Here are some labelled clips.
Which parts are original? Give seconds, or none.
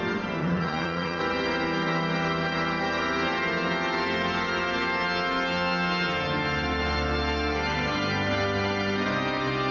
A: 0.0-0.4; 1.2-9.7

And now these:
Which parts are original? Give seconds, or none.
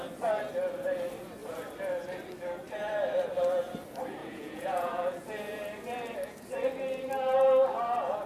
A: 0.0-4.2; 5.3-8.3